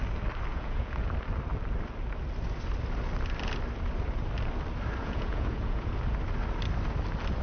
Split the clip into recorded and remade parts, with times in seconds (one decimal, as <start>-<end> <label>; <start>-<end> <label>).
0.0-0.5 recorded; 0.5-1.1 remade; 1.1-5.0 recorded; 5.0-5.9 remade; 5.9-7.4 recorded